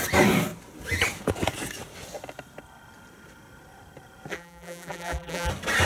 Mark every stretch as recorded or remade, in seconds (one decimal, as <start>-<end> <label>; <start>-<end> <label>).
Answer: 0.0-4.3 recorded; 4.3-5.5 remade; 5.5-5.9 recorded